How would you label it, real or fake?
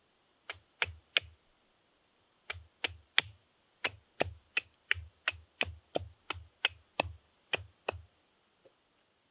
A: real